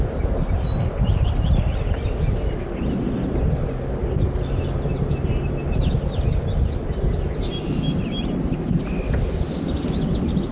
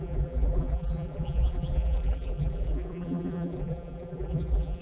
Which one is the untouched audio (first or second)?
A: first